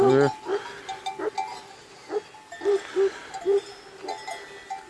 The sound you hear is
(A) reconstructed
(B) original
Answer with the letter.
B